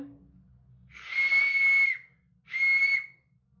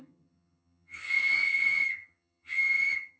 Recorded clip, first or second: first